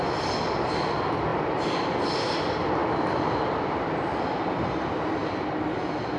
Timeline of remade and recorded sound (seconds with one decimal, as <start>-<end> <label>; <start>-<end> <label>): 0.0-1.3 recorded; 1.3-1.8 remade; 1.8-6.2 recorded